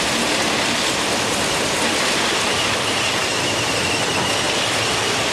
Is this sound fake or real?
real